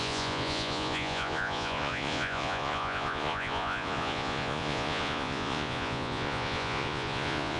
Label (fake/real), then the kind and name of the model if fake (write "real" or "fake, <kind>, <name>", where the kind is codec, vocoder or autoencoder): fake, vocoder, Vocos